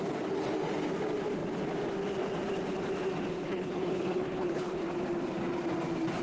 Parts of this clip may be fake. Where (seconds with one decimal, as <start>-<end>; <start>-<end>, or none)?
3.3-4.9